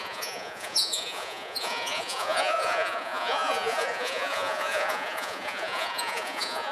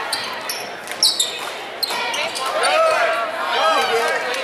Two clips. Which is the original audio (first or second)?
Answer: second